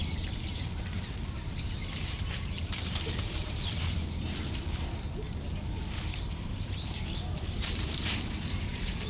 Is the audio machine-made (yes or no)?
yes